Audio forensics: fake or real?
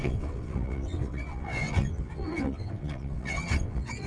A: fake